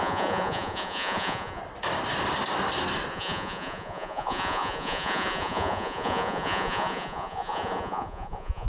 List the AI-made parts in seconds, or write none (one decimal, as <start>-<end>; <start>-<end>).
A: 0.0-1.6; 3.1-8.7

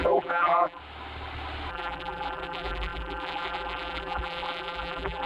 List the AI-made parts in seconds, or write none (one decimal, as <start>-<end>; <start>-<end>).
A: 0.0-0.8; 1.7-5.3

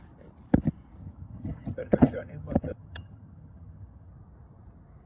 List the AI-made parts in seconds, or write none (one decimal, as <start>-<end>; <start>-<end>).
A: 1.0-4.1